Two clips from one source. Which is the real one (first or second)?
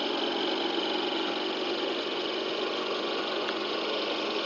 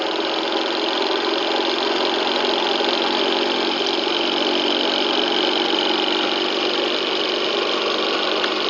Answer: second